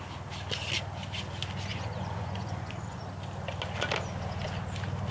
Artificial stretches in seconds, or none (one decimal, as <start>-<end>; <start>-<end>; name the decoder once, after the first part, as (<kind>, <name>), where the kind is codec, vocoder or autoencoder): 1.7-3.0 (vocoder, Vocos)